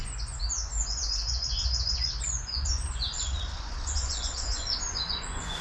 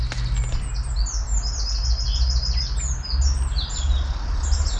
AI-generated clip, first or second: first